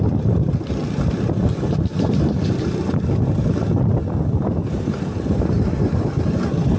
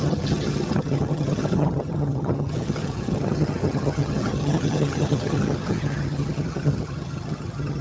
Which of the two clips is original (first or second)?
first